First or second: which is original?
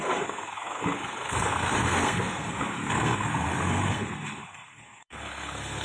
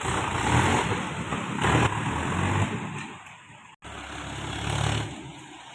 second